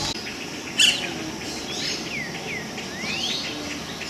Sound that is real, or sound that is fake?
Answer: real